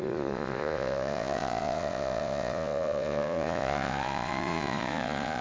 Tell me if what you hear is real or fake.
fake